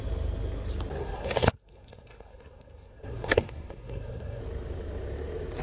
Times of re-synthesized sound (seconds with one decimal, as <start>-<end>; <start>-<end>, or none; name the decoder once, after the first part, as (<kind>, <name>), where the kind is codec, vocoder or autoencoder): 1.0-4.4 (codec, SNAC)